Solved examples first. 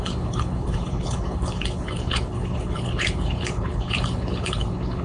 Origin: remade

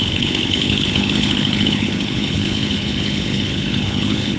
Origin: remade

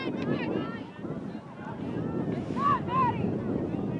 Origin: recorded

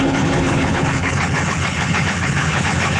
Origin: remade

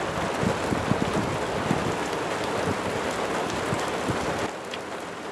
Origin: recorded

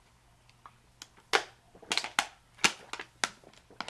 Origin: recorded